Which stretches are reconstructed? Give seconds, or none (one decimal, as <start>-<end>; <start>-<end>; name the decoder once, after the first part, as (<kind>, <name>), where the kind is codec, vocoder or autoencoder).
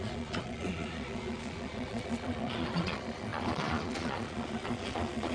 0.0-5.3 (vocoder, Vocos)